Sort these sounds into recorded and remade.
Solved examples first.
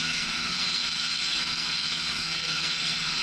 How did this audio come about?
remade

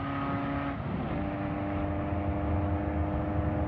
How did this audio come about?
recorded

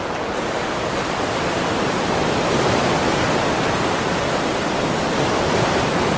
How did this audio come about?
recorded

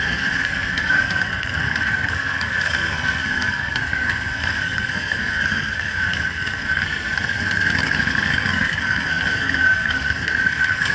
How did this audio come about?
remade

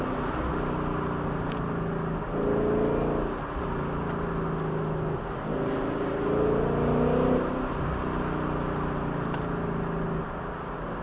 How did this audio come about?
recorded